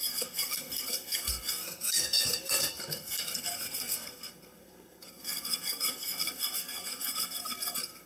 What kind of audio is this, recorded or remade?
remade